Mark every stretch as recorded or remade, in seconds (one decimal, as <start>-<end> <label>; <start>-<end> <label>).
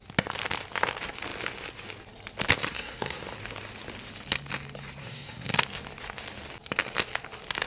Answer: 0.0-2.7 recorded; 2.7-3.2 remade; 3.2-5.0 recorded; 5.0-5.6 remade; 5.6-7.7 recorded